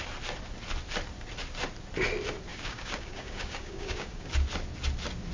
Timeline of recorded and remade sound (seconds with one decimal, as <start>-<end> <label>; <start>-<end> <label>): 0.0-2.5 recorded; 2.5-4.3 remade; 4.3-5.3 recorded